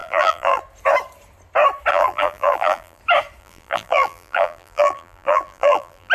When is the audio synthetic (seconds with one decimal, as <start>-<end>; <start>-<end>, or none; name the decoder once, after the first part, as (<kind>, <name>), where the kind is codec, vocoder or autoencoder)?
0.0-0.6 (vocoder, BigVGAN v2); 1.9-3.0; 3.4-6.1